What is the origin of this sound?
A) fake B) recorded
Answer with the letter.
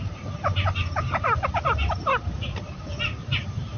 A